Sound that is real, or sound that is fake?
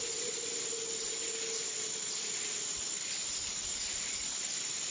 real